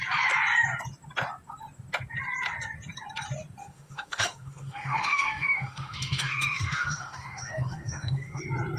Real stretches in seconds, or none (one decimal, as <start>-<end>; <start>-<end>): 0.0-3.6; 8.4-8.8